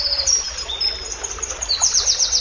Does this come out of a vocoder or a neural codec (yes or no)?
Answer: no